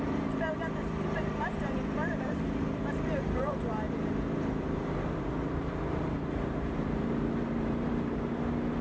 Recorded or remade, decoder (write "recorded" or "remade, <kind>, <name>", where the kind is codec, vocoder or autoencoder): remade, vocoder, BigVGAN v2